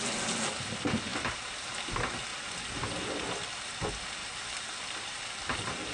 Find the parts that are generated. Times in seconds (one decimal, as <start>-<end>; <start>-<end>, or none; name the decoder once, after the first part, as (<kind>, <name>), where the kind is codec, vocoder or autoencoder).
4.2-5.4 (vocoder, BigVGAN v2)